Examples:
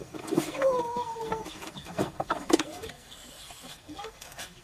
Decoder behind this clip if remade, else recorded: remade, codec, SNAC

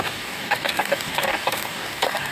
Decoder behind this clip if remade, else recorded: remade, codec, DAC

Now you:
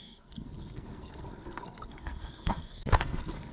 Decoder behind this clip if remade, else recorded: remade, codec, SNAC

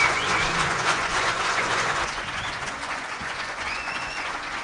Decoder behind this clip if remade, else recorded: remade, vocoder, Vocos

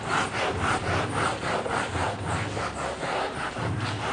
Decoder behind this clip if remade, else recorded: recorded